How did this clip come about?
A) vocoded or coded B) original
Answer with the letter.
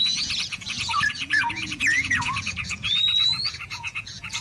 A